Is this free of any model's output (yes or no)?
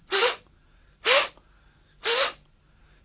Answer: yes